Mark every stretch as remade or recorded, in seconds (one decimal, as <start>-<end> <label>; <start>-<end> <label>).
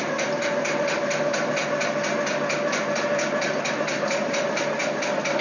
0.0-5.4 recorded